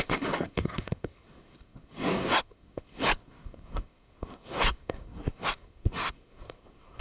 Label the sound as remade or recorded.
remade